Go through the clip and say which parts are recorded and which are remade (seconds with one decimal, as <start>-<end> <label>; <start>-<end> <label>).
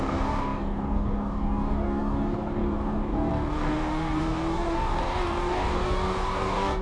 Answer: 0.0-6.8 remade